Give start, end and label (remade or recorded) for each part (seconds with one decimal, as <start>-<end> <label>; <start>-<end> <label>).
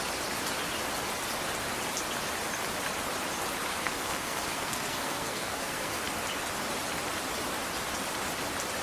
0.0-3.7 recorded; 3.7-6.0 remade; 6.0-8.8 recorded